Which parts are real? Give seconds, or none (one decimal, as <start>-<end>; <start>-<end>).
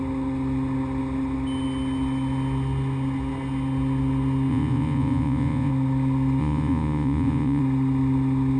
0.0-4.5; 5.7-6.4; 7.6-8.6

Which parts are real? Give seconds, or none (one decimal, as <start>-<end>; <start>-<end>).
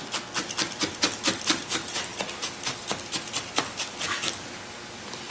0.0-5.3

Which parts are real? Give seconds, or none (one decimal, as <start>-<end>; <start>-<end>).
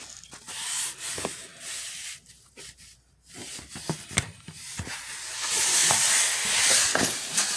0.0-1.5; 2.6-3.4; 5.0-5.8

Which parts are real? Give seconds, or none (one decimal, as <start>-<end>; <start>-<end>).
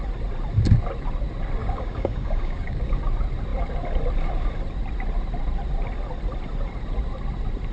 0.0-1.6; 3.0-7.7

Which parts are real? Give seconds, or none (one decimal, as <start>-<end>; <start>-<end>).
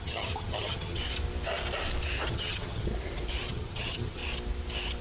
1.0-2.3; 2.9-3.5; 4.2-5.0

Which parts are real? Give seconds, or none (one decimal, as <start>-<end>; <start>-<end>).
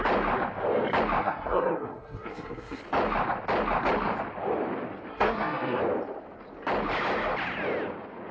0.0-1.2; 2.8-5.1; 5.8-8.3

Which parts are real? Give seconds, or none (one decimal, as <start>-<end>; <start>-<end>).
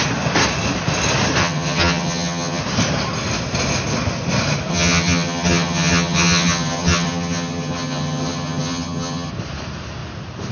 0.0-1.4; 2.6-4.7; 9.3-10.5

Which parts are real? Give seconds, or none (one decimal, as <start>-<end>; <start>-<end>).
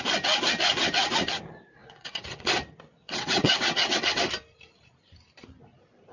0.0-1.8; 2.5-3.0; 4.2-6.1